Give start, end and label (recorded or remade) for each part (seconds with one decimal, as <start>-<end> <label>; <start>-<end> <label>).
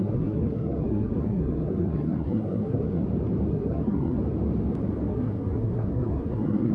0.0-3.0 remade; 3.0-3.5 recorded; 3.5-4.2 remade; 4.2-5.1 recorded; 5.1-6.7 remade